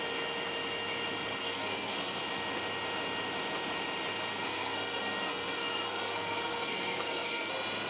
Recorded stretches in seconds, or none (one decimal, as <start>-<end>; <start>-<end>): 0.0-1.4; 2.2-4.3; 7.5-7.9